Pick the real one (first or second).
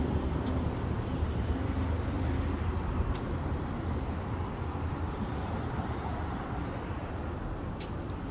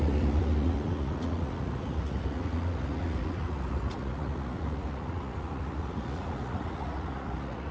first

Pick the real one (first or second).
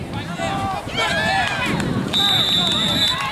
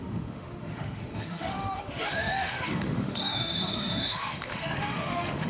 first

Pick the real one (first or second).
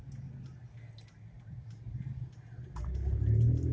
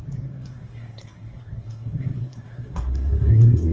first